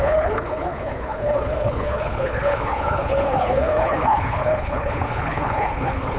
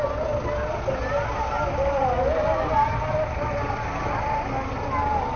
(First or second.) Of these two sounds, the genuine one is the second